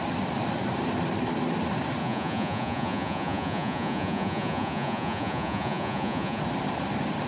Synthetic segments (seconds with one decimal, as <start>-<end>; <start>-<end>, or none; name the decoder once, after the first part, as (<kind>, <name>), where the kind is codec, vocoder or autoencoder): 2.0-6.4 (vocoder, Vocos)